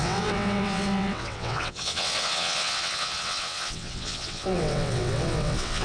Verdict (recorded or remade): remade